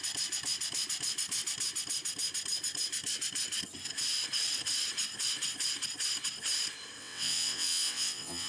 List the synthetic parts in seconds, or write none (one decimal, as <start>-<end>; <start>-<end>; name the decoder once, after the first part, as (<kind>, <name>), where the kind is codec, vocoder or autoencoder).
7.0-8.5 (vocoder, WaveNeXt)